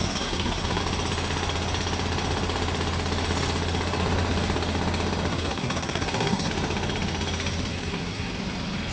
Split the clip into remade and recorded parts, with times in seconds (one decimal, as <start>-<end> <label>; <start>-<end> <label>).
0.0-0.8 remade; 0.8-5.3 recorded; 5.3-6.5 remade; 6.5-7.7 recorded; 7.7-8.3 remade; 8.3-8.9 recorded